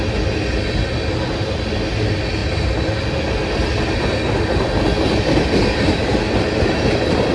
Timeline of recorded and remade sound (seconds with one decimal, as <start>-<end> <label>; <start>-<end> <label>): 0.0-7.3 recorded